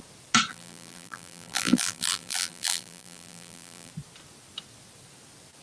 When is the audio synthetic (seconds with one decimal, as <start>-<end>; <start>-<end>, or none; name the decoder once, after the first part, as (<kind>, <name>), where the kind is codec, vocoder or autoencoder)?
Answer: 0.5-3.9 (vocoder, BigVGAN v2)